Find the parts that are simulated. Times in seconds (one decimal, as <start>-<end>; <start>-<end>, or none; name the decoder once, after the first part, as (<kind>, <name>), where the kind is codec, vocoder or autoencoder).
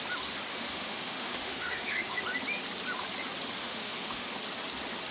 0.5-2.2 (autoencoder, DAC-VAE); 3.6-4.3